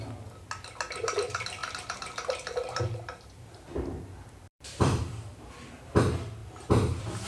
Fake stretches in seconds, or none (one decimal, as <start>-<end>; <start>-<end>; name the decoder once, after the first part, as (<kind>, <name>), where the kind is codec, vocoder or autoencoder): 1.6-6.0 (vocoder, BigVGAN v2); 6.4-7.3